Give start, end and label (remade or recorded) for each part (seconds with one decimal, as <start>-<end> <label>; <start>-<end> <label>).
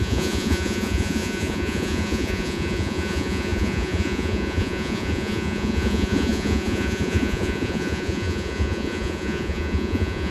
0.0-10.3 remade